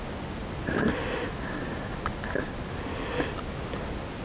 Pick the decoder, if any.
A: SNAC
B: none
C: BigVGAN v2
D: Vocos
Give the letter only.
B